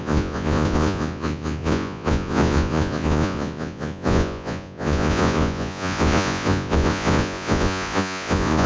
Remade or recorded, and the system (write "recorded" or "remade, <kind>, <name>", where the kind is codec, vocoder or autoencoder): remade, vocoder, Vocos